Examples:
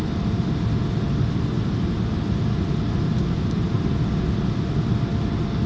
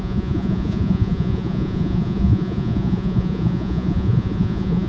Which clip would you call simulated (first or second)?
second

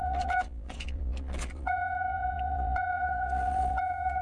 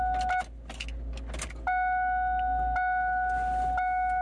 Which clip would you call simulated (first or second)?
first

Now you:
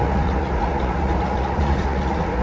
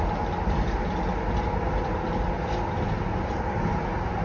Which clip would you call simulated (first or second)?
first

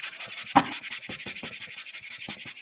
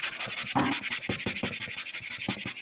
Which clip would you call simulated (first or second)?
first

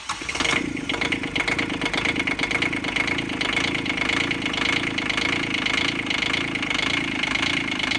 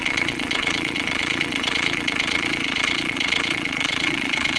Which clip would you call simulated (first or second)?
second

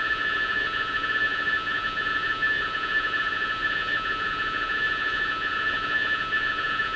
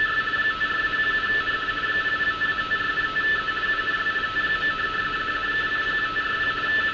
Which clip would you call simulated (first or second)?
first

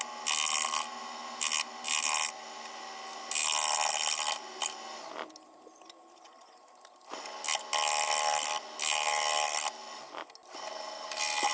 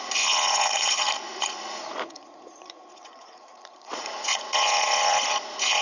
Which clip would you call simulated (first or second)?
second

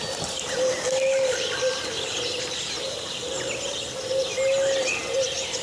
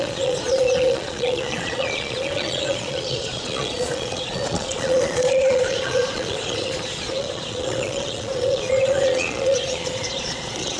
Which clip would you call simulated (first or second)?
second